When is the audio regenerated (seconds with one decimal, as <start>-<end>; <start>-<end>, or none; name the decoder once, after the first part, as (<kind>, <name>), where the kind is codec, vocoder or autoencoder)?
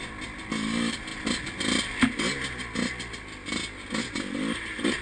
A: none